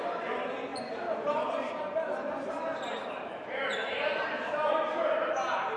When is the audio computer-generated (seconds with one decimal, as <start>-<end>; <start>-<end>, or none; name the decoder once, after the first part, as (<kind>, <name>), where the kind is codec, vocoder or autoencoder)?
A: 0.0-0.7 (vocoder, BigVGAN v2); 2.5-5.8